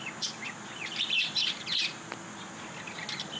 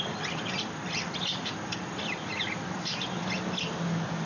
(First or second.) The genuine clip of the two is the first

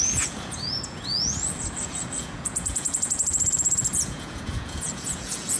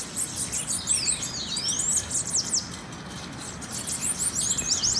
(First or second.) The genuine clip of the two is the second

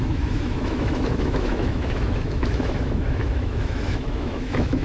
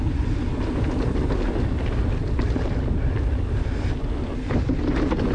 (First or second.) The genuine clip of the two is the second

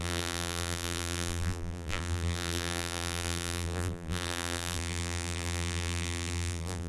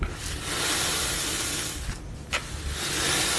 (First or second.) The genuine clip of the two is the second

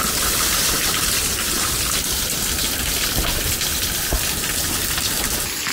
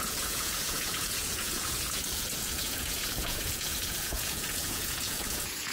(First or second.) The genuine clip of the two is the first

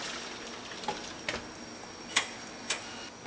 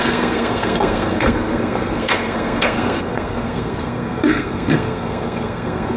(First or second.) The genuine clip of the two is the first